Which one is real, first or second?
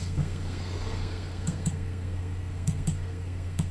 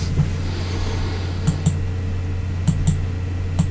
second